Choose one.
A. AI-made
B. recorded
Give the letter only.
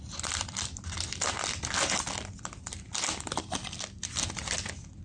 B